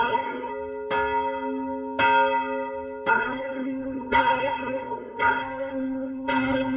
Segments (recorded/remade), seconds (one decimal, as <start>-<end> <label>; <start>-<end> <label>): 0.0-0.5 remade; 0.5-3.1 recorded; 3.1-6.8 remade